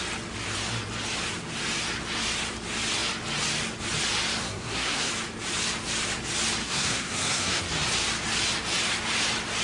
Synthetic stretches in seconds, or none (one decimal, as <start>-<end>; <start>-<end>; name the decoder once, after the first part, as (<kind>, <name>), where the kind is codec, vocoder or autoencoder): 4.4-5.1 (codec, SNAC); 6.6-7.6